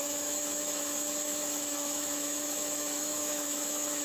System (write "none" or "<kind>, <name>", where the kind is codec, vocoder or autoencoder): autoencoder, DAC-VAE